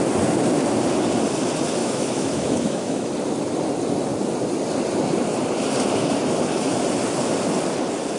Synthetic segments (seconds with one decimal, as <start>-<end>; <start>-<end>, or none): 1.8-3.1